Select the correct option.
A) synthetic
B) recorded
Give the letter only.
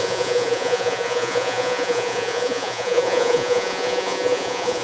A